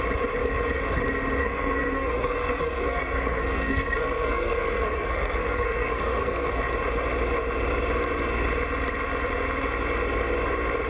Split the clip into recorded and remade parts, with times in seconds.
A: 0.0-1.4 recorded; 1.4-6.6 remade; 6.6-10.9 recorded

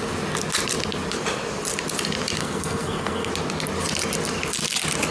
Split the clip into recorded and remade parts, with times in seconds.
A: 0.0-2.4 recorded; 2.4-3.3 remade; 3.3-5.1 recorded

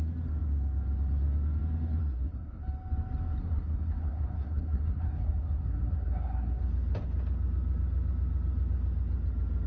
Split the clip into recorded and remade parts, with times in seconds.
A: 0.0-2.0 recorded; 2.0-2.6 remade; 2.6-3.4 recorded; 3.4-6.6 remade; 6.6-9.7 recorded

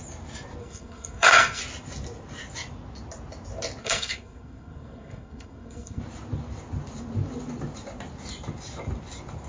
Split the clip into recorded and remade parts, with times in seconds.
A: 0.0-0.6 recorded; 0.6-1.6 remade; 1.6-3.8 recorded; 3.8-6.0 remade; 6.0-9.5 recorded